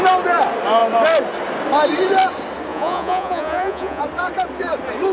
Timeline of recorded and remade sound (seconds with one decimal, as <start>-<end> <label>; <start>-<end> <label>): 0.0-2.7 recorded; 2.7-4.0 remade; 4.0-5.1 recorded